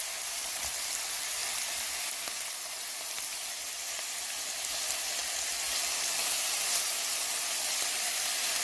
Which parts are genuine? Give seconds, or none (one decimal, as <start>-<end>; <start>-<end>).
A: 1.4-2.9; 5.2-7.5